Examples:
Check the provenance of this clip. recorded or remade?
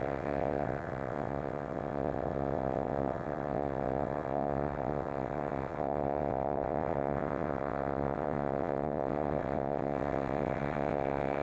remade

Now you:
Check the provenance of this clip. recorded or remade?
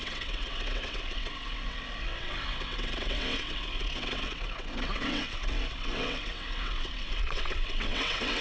remade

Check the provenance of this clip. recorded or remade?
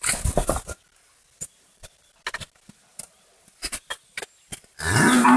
recorded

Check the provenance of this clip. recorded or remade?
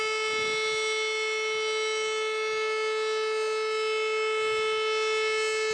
recorded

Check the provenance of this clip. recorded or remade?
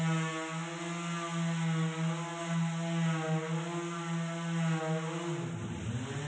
recorded